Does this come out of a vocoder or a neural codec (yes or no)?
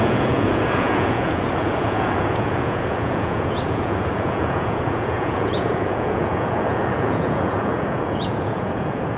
yes